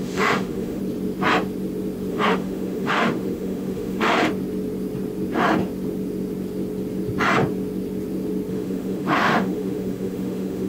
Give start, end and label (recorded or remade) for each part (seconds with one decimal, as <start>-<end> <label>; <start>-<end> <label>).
0.0-0.8 remade; 0.8-2.1 recorded; 2.1-4.2 remade; 4.2-8.5 recorded; 8.5-10.7 remade